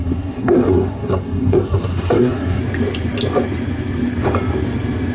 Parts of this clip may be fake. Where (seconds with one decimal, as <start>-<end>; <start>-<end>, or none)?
0.0-2.6